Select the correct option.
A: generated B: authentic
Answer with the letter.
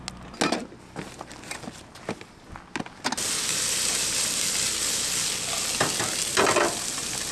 B